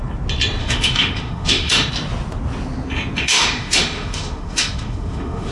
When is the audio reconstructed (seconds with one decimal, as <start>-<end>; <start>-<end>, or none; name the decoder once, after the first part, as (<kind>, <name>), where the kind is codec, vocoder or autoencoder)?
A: 0.6-1.9 (autoencoder, DAC-VAE); 3.2-5.5